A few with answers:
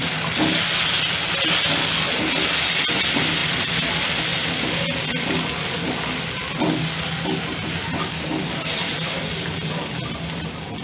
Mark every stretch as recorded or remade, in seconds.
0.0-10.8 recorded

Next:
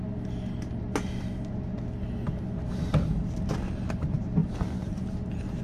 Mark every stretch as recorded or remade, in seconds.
0.0-2.7 recorded; 2.7-3.9 remade; 3.9-4.4 recorded; 4.4-5.6 remade

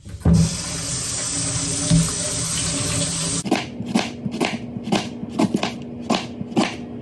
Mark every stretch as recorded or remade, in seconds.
0.0-7.0 recorded

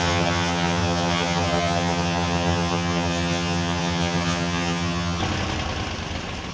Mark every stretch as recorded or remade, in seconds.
0.0-5.2 remade; 5.2-6.5 recorded